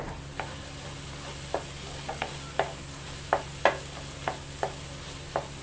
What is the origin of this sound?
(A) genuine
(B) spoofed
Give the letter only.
A